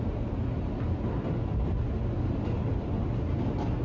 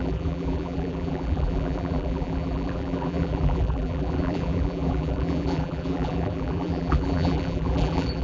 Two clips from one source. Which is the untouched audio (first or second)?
first